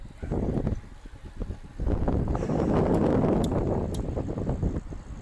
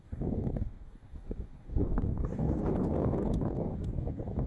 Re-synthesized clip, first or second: second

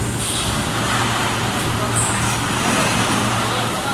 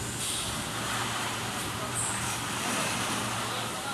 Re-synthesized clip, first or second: second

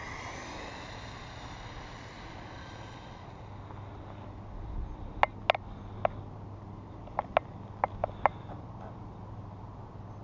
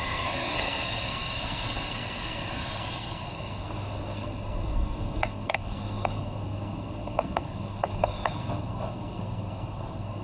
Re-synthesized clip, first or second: second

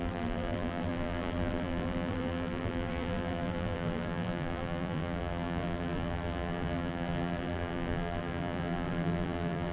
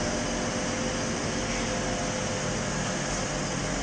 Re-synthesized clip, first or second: first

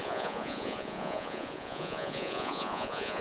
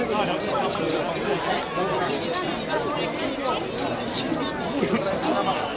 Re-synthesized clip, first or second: first